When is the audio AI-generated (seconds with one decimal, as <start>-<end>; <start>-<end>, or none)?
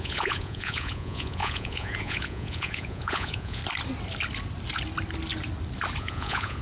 0.0-3.6; 6.0-6.6